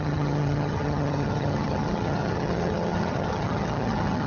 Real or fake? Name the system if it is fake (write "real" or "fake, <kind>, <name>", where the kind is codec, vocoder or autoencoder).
fake, vocoder, HiFi-GAN